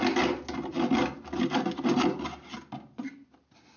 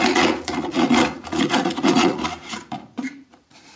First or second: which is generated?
second